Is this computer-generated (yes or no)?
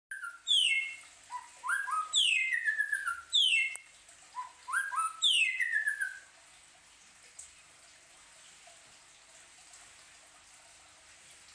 no